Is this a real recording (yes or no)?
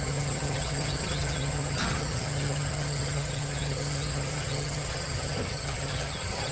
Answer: no